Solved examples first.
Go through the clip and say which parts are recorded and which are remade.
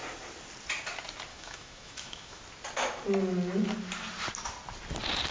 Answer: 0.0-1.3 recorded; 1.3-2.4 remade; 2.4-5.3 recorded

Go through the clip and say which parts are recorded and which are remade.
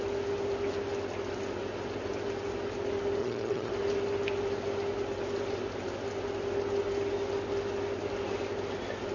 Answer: 0.0-3.2 recorded; 3.2-3.7 remade; 3.7-9.1 recorded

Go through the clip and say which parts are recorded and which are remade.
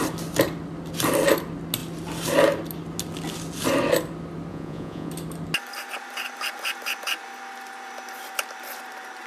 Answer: 0.0-4.5 recorded; 4.5-5.1 remade; 5.1-9.3 recorded